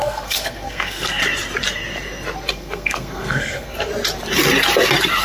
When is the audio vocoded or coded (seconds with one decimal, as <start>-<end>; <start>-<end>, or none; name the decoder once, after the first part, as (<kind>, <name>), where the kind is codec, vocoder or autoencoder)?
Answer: 0.0-1.2 (codec, SNAC); 2.5-3.9